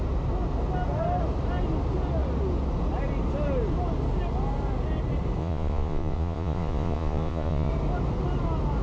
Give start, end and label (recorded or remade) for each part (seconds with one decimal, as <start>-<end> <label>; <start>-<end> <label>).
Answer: 0.0-5.4 recorded; 5.4-7.7 remade; 7.7-8.8 recorded